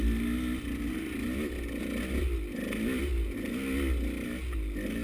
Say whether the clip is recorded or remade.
recorded